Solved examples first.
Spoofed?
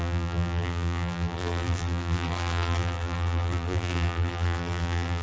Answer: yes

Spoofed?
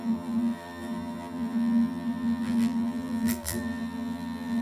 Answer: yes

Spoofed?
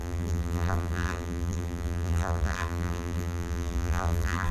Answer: yes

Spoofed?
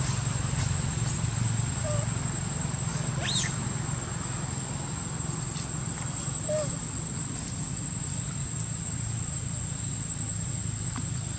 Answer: yes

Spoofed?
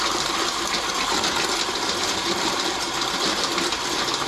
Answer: no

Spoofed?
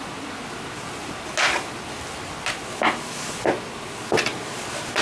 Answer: no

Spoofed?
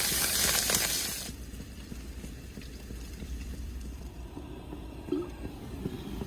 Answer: yes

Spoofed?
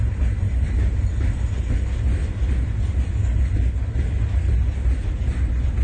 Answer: no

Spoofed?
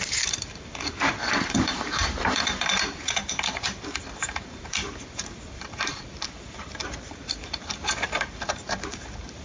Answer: yes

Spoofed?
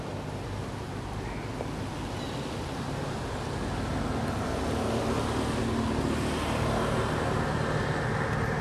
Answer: no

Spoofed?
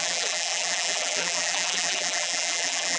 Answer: yes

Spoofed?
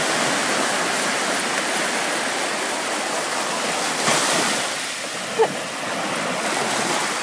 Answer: no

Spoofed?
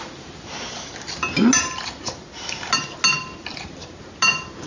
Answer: no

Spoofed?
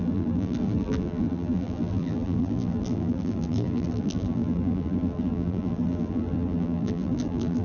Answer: yes